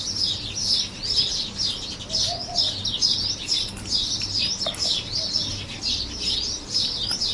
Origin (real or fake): real